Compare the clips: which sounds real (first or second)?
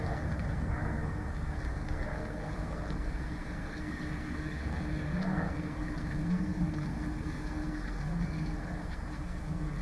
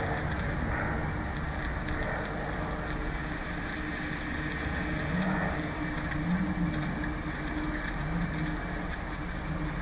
second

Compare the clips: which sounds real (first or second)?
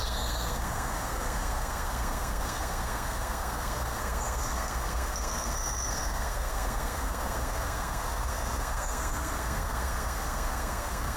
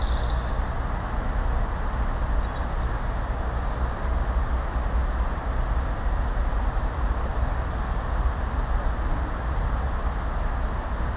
second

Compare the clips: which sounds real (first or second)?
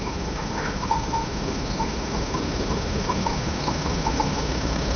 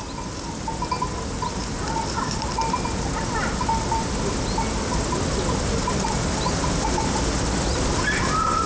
second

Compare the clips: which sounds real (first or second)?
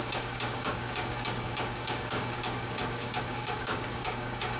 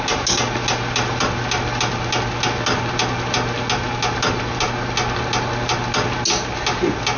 second